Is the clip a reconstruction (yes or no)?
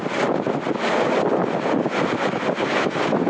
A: no